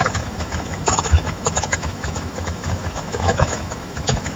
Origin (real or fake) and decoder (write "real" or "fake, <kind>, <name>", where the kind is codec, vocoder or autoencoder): fake, autoencoder, DAC-VAE